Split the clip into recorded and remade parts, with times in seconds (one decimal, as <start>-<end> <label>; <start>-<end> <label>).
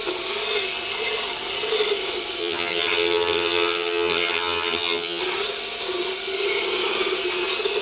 0.0-2.4 recorded; 2.4-5.2 remade; 5.2-7.8 recorded